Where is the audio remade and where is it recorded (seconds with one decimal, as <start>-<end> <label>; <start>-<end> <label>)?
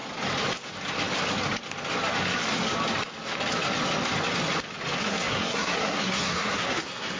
0.0-5.0 recorded; 5.0-7.2 remade